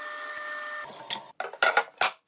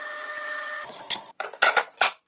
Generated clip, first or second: second